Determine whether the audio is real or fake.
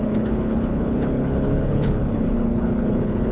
fake